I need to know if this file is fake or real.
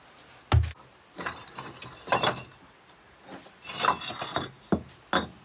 real